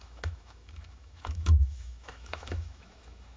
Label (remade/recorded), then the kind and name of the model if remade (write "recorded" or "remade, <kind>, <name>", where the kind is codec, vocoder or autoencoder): remade, autoencoder, DAC-VAE